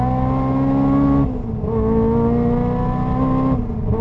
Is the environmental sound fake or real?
real